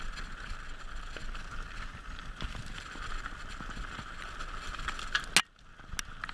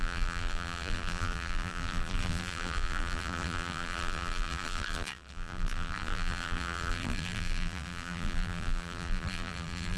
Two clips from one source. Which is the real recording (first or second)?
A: first